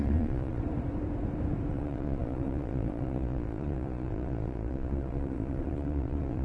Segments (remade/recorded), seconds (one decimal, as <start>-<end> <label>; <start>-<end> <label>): 0.0-0.6 remade; 0.6-1.7 recorded; 1.7-6.4 remade